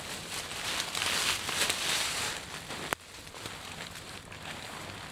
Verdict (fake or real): real